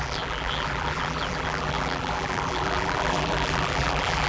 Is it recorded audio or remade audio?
remade